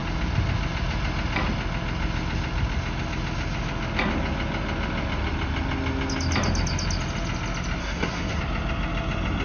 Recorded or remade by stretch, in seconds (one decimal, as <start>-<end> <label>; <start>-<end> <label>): 0.0-7.8 recorded; 7.8-8.4 remade; 8.4-9.4 recorded